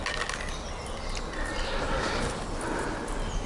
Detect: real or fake real